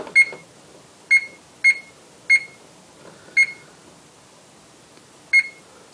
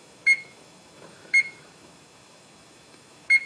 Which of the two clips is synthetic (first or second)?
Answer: second